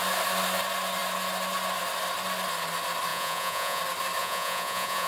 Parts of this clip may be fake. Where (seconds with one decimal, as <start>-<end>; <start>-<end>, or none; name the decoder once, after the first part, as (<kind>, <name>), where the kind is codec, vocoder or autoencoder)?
3.1-3.8 (vocoder, Vocos); 4.2-5.1